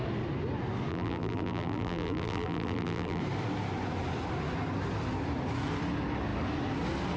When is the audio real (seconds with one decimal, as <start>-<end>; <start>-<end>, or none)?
0.0-0.9; 3.2-7.2